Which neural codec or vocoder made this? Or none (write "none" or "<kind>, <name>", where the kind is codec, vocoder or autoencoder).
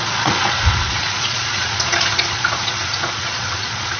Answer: vocoder, Vocos